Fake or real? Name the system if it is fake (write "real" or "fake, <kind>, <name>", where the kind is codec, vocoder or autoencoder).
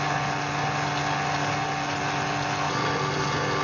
real